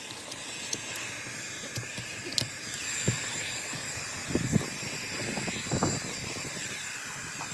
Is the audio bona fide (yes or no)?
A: yes